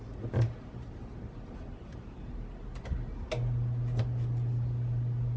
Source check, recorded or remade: recorded